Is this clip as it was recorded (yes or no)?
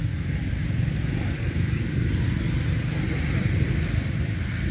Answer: yes